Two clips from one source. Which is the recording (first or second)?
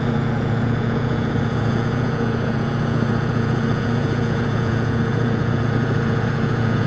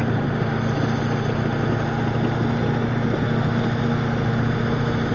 second